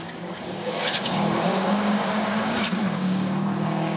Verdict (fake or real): fake